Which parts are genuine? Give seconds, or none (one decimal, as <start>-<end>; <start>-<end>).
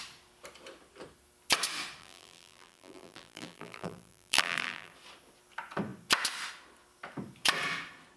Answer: 0.0-2.0; 4.9-8.2